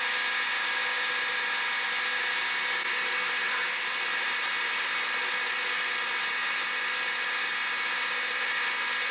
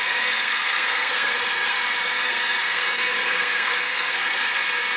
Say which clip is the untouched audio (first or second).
first